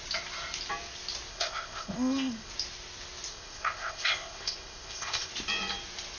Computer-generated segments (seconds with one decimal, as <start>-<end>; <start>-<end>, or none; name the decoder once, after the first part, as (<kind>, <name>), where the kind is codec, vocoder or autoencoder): 1.3-2.5 (codec, ZipCodec); 3.3-5.3